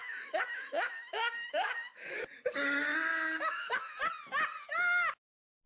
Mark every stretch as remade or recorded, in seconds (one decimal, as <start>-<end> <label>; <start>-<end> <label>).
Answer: 0.0-2.2 remade; 2.2-3.1 recorded; 3.1-4.0 remade; 4.0-5.7 recorded